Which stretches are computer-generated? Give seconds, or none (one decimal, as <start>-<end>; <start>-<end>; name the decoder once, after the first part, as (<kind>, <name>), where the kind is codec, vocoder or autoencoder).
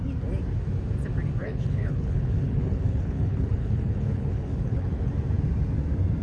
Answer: 1.4-5.1 (codec, HILCodec)